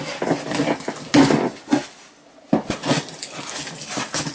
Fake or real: real